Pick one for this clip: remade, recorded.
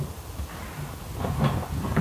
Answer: recorded